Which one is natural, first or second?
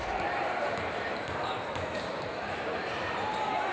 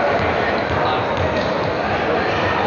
second